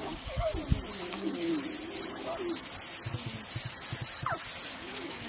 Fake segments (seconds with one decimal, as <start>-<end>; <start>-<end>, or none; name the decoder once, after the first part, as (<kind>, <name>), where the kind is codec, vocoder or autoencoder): 0.0-0.5 (codec, DAC); 1.1-1.5; 4.7-5.3